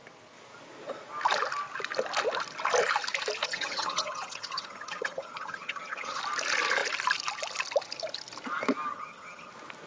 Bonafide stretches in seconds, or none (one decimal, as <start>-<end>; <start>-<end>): 0.0-3.4; 6.2-8.9; 9.5-9.9